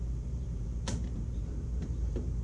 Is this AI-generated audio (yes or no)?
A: yes